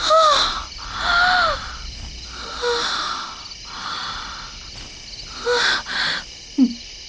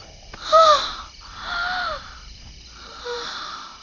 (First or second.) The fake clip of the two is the second